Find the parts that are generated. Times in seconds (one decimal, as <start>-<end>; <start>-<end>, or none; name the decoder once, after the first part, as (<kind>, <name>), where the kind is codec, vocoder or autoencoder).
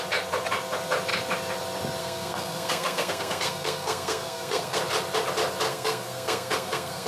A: 2.0-4.8 (codec, SNAC); 5.7-7.1